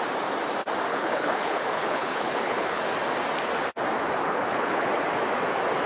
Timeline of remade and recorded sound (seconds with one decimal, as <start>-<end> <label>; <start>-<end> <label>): 0.0-0.9 recorded; 0.9-2.8 remade; 2.8-4.2 recorded; 4.2-4.9 remade; 4.9-5.9 recorded